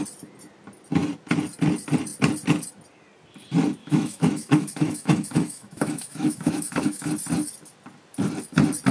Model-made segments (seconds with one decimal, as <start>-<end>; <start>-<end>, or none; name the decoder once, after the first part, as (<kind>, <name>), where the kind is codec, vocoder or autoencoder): 3.8-7.1 (autoencoder, DAC-VAE)